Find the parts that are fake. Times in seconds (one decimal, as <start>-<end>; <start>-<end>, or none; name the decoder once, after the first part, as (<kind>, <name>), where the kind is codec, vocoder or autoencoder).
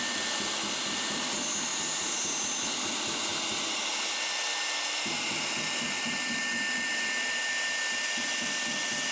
none